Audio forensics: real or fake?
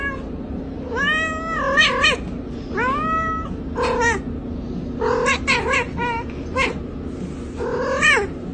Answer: real